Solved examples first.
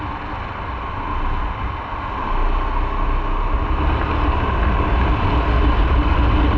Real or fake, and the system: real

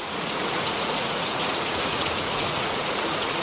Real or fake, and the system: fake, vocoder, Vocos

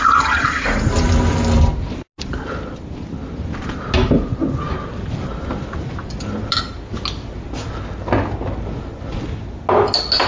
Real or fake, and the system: real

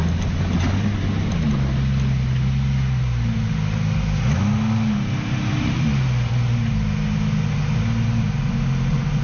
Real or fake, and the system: real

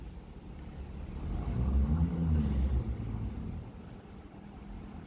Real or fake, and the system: real